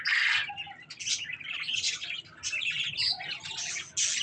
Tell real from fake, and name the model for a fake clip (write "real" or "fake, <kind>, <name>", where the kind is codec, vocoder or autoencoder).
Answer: real